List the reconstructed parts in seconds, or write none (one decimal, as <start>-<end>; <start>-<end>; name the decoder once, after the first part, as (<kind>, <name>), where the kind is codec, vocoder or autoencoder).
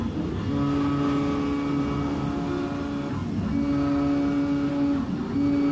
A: none